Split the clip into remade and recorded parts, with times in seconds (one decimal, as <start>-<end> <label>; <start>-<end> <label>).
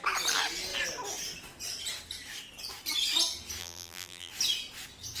0.0-3.6 recorded; 3.6-4.3 remade; 4.3-5.2 recorded